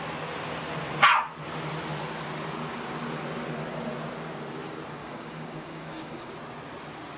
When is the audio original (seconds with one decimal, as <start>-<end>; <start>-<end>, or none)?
0.0-5.0; 6.3-7.2